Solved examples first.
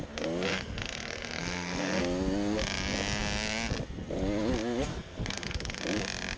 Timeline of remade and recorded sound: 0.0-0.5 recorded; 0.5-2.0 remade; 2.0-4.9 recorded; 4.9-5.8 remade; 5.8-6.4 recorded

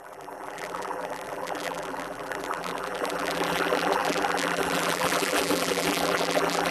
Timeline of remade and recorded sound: 0.0-6.7 remade

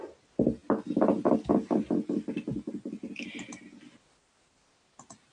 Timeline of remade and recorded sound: 0.0-5.3 recorded

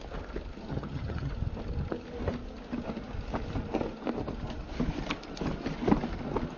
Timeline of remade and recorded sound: 0.0-0.7 recorded; 0.7-1.3 remade; 1.3-6.6 recorded